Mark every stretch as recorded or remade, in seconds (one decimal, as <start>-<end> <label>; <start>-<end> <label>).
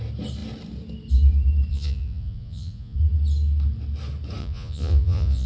0.0-1.7 recorded; 1.7-3.0 remade; 3.0-4.4 recorded; 4.4-5.5 remade